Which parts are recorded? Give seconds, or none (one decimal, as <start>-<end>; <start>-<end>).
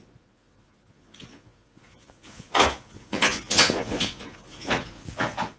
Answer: none